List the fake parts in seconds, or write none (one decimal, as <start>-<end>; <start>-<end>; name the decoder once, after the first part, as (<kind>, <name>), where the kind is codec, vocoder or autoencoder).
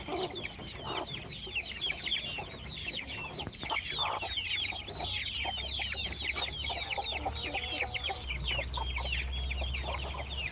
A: 2.8-3.4 (autoencoder, DAC-VAE)